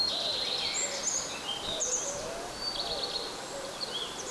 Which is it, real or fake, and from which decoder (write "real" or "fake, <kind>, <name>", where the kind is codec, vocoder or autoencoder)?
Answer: real